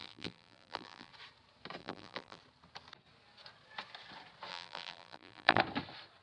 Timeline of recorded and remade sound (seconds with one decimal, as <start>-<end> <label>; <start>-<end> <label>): 0.0-1.1 remade; 1.1-1.8 recorded; 1.8-2.4 remade; 2.4-4.5 recorded; 4.5-5.6 remade; 5.6-6.2 recorded

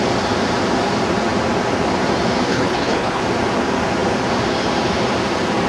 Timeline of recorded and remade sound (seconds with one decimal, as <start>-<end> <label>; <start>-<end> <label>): 0.0-2.5 recorded; 2.5-3.2 remade; 3.2-5.7 recorded

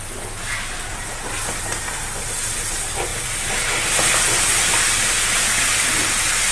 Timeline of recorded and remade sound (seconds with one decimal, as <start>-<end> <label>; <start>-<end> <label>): 0.0-6.5 recorded

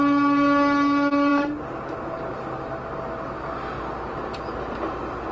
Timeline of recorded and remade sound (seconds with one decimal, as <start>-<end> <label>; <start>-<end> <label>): 0.0-5.3 recorded

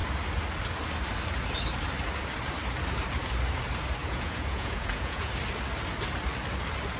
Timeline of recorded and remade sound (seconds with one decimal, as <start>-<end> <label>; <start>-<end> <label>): 0.0-4.0 recorded; 4.0-5.3 remade; 5.3-7.0 recorded

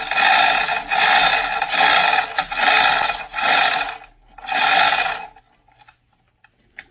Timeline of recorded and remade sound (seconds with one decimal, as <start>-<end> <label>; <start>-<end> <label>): 0.0-6.9 recorded